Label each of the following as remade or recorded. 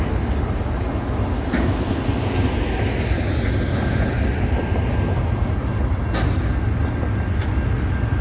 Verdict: recorded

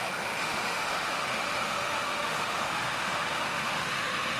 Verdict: remade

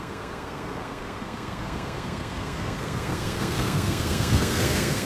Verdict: remade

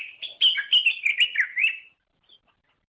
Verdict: recorded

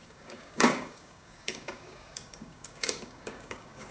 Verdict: remade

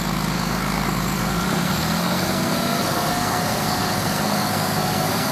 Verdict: remade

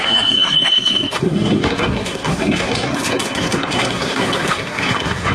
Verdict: remade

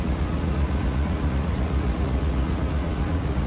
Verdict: remade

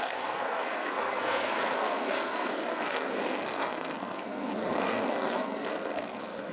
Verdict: remade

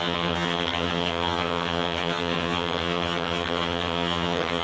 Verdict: remade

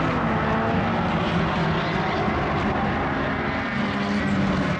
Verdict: recorded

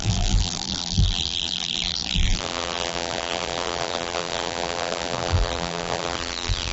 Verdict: remade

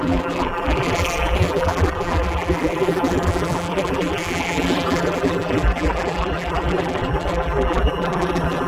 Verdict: remade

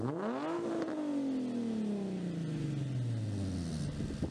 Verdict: recorded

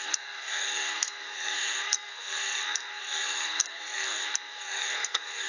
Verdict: remade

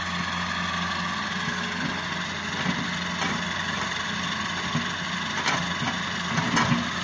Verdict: recorded